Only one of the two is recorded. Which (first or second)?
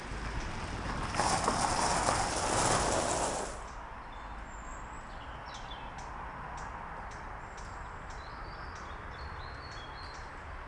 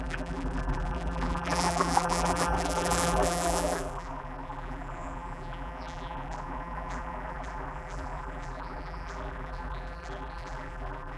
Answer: first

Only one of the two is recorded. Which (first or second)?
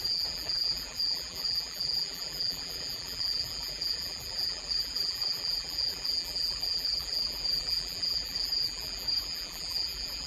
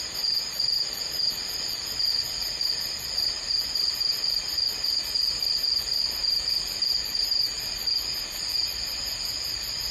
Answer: second